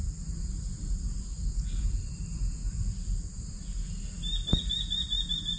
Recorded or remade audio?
recorded